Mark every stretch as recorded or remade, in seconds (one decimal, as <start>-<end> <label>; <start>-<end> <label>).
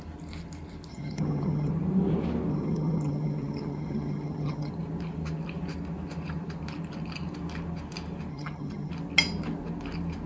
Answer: 0.0-0.9 recorded; 0.9-1.7 remade; 1.7-2.5 recorded; 2.5-4.7 remade; 4.7-8.3 recorded; 8.3-8.9 remade; 8.9-10.3 recorded